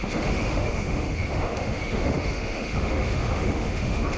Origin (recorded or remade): remade